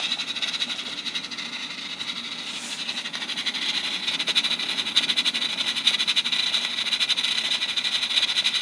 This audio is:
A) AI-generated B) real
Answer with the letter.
B